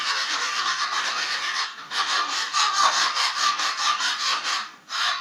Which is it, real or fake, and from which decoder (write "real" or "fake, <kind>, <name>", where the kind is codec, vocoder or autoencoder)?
fake, codec, DAC